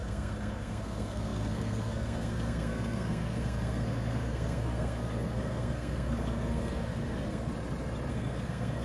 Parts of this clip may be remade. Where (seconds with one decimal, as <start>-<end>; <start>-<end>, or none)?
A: 0.0-7.5; 8.1-8.8